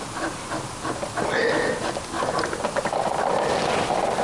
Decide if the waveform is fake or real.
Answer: real